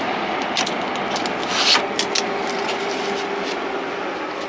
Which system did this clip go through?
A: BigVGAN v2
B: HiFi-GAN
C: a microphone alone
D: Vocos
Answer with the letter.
C